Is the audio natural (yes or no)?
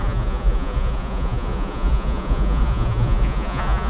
no